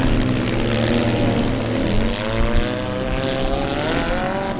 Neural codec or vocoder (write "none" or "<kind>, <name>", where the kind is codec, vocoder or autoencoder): none